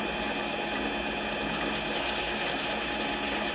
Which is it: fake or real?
real